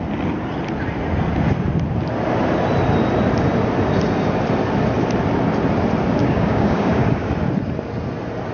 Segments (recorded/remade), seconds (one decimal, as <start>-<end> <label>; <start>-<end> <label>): 0.0-6.2 recorded; 6.2-7.3 remade; 7.3-8.5 recorded